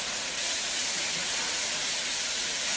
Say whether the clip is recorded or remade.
remade